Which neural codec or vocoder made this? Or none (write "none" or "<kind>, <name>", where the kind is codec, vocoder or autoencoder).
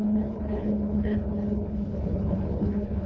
codec, HILCodec